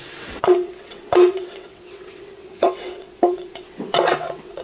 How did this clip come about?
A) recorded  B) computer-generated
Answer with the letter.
B